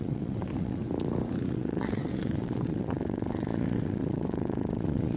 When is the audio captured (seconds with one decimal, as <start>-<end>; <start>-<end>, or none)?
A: 0.8-1.5